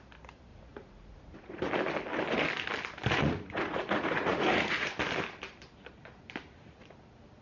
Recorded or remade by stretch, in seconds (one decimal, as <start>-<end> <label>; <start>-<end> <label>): 0.0-0.5 recorded; 0.5-1.7 remade; 1.7-3.2 recorded; 3.2-4.9 remade; 4.9-7.4 recorded